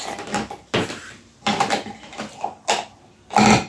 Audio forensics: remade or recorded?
recorded